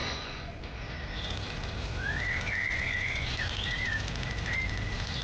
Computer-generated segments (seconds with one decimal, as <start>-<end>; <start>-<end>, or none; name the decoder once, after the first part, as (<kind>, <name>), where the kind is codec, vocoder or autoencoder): 0.0-0.6 (vocoder, Vocos); 2.6-3.4